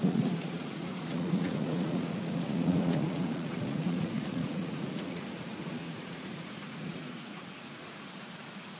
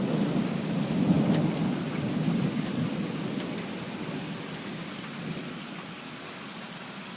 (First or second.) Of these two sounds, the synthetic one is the first